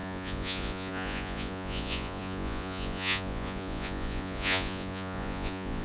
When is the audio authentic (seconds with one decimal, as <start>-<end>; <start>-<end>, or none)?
none